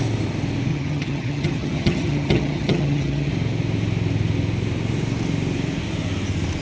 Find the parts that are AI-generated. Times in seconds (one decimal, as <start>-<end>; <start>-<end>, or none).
0.7-3.3